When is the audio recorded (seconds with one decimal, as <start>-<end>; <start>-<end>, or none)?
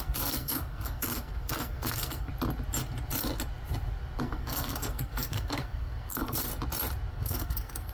2.3-4.2; 6.5-7.1